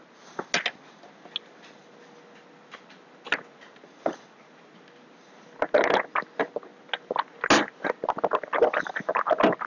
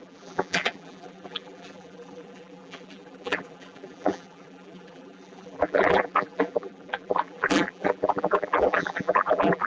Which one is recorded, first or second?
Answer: first